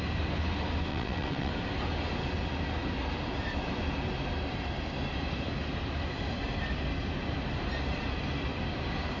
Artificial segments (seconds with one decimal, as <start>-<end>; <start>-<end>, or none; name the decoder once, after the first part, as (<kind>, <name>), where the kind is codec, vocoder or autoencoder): 0.9-1.5 (vocoder, WaveNeXt)